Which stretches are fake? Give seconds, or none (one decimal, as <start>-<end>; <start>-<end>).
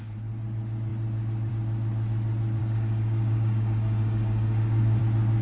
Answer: 2.6-5.0